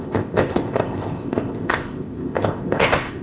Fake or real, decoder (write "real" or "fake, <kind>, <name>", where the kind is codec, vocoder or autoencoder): fake, codec, ZipCodec